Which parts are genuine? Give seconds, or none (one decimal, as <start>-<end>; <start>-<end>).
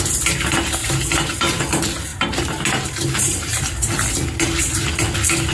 0.0-0.8; 1.6-2.1; 3.6-5.5